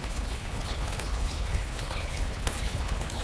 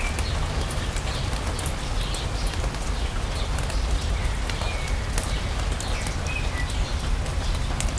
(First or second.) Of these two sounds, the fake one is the first